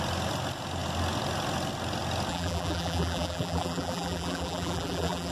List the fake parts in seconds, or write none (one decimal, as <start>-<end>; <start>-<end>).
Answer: 2.3-5.3